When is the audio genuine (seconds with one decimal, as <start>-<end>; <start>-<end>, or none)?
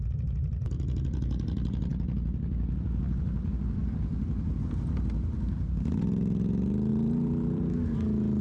0.0-6.9; 7.7-8.4